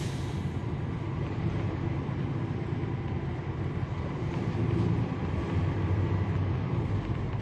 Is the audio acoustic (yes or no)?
no